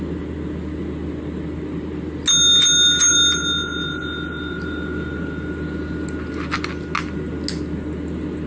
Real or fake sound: real